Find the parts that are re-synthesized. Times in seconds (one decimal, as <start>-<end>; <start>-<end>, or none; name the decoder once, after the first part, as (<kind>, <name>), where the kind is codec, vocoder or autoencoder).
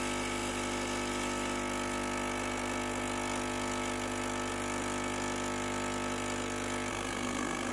6.9-7.7 (codec, SNAC)